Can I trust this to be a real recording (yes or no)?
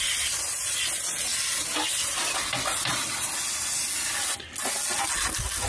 yes